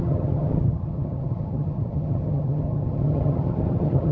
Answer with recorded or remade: remade